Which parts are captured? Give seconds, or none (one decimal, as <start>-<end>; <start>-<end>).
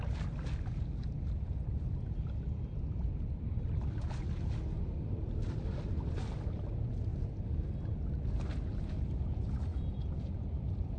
0.0-9.7; 10.3-11.0